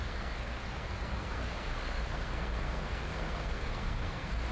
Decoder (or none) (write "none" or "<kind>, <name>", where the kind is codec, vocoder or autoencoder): codec, SNAC